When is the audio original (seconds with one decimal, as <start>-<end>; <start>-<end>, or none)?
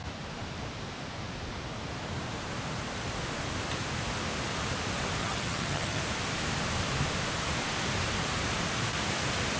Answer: 0.0-5.2; 6.0-9.6